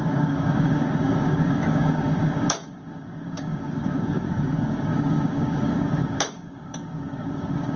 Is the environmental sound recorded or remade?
remade